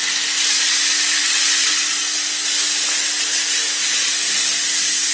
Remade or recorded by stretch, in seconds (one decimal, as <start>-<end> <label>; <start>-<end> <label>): 0.0-5.1 recorded